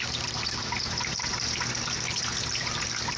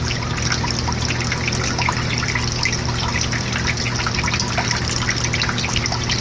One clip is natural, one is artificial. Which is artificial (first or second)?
first